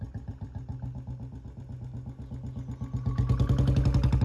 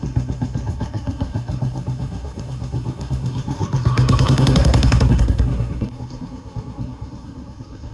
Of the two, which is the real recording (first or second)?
first